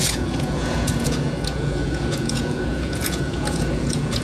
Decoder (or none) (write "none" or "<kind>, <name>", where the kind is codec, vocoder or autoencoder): vocoder, Vocos